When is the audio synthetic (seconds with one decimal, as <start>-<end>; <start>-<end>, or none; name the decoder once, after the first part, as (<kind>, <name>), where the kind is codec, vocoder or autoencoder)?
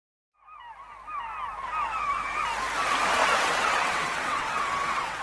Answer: 3.2-5.2 (vocoder, WaveNeXt)